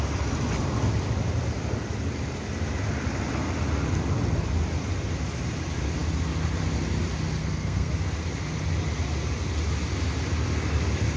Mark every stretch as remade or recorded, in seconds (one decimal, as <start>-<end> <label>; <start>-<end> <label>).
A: 0.0-7.4 recorded; 7.4-7.9 remade; 7.9-11.2 recorded